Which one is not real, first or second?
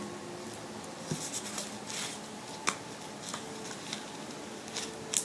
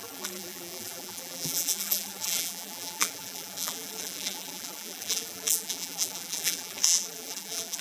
second